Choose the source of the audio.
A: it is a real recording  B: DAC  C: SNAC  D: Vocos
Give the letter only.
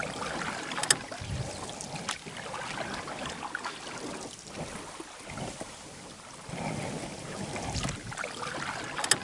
A